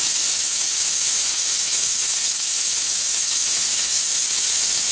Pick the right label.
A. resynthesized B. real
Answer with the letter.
A